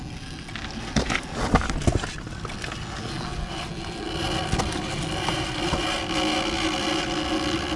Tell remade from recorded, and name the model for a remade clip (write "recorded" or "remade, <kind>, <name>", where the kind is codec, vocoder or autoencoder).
recorded